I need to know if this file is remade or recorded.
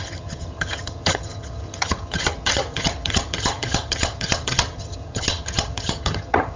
remade